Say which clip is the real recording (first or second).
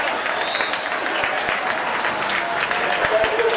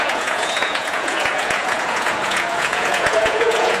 first